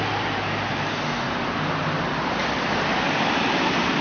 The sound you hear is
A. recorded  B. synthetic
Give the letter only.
A